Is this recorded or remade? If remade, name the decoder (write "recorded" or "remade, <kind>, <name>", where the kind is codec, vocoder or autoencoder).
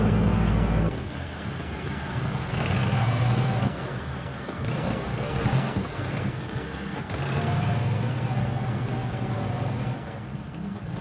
remade, codec, SNAC